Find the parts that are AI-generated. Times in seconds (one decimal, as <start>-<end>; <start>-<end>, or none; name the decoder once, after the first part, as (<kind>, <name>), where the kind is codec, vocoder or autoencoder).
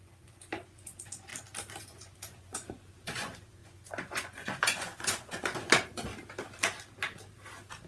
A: 0.0-1.3 (vocoder, Vocos); 1.8-6.1